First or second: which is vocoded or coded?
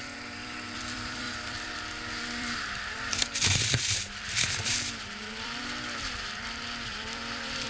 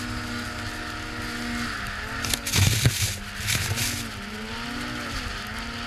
first